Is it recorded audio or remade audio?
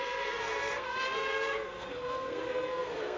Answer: remade